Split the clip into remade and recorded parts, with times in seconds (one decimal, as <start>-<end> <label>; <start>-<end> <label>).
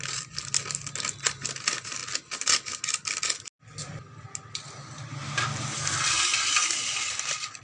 0.0-7.6 recorded